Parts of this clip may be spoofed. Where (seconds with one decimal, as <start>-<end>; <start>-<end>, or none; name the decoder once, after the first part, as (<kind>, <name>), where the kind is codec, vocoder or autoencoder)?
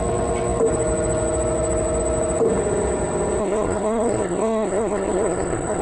3.4-5.8 (codec, SNAC)